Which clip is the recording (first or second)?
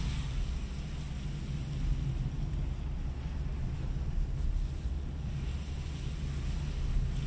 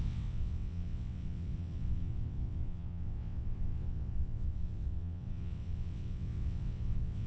first